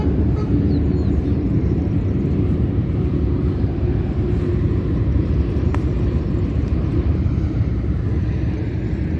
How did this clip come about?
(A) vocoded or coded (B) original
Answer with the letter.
A